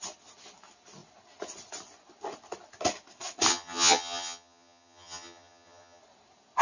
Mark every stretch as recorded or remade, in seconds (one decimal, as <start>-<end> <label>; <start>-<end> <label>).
0.0-3.5 recorded; 3.5-6.0 remade; 6.0-6.6 recorded